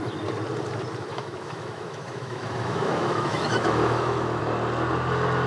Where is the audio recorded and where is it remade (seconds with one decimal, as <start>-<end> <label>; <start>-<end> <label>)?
0.0-1.1 recorded; 1.1-4.4 remade; 4.4-5.5 recorded